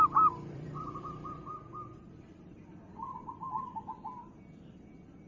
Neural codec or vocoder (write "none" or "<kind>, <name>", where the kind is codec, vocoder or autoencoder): vocoder, BigVGAN v2